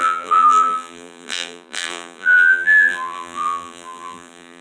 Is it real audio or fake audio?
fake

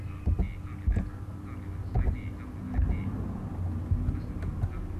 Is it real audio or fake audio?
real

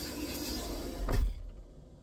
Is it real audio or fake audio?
real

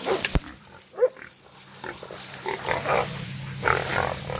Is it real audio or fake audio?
fake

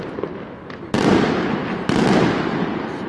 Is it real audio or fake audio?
real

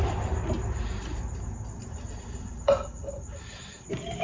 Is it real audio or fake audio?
fake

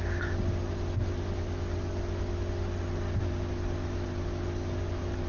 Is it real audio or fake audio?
real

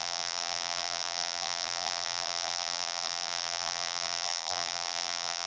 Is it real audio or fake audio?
fake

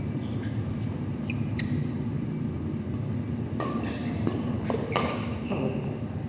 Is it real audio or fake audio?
real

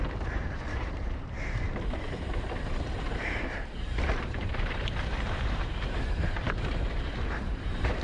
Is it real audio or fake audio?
fake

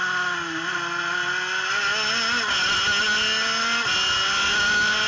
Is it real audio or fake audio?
real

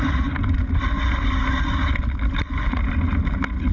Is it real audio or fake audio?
real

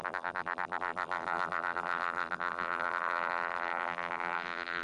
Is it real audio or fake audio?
fake